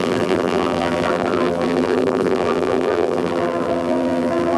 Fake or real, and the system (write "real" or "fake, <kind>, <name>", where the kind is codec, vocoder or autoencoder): fake, vocoder, BigVGAN v2